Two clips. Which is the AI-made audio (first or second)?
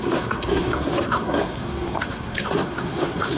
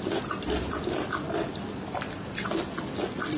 first